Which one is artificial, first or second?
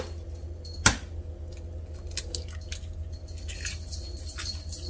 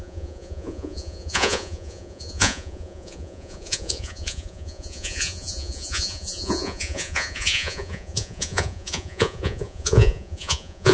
second